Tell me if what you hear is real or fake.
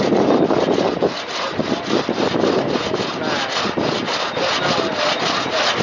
real